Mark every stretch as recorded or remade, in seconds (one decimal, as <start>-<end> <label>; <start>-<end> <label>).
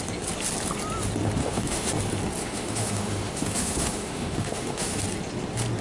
0.0-1.4 recorded; 1.4-1.9 remade; 1.9-2.4 recorded; 2.4-5.0 remade; 5.0-5.8 recorded